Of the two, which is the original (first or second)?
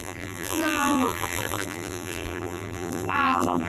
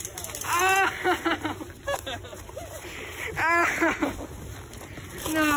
second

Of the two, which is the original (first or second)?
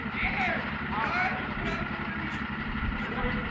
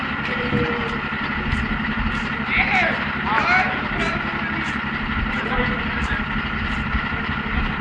second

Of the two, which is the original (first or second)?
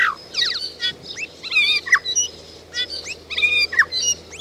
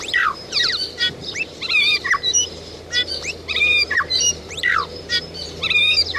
first